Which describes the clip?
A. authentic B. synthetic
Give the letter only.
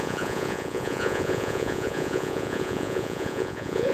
B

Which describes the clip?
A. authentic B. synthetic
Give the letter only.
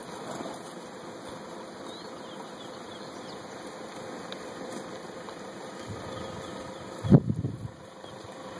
A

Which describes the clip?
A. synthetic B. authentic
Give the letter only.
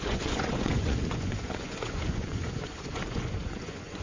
A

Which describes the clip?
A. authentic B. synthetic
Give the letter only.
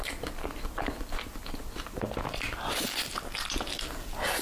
A